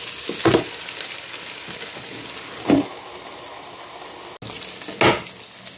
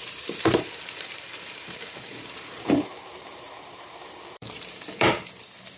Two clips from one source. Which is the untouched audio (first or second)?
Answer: first